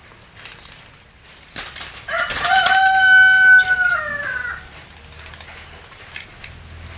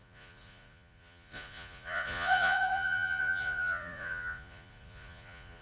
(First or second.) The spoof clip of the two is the second